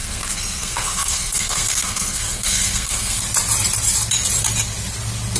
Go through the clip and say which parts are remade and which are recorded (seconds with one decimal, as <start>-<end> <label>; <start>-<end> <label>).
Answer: 0.0-3.2 remade; 3.2-5.4 recorded